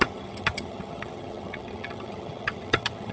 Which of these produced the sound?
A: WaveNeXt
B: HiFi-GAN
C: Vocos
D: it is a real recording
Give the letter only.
B